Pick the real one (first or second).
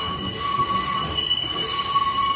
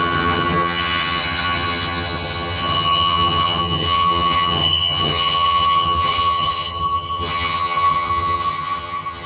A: first